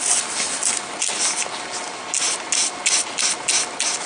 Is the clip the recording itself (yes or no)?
yes